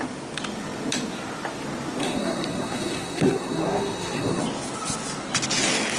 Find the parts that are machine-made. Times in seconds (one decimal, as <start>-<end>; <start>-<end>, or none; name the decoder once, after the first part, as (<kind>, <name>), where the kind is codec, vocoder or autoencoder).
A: 2.0-4.4 (codec, SNAC)